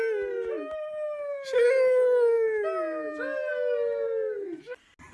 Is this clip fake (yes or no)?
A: no